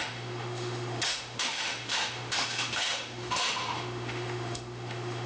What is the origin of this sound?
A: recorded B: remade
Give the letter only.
B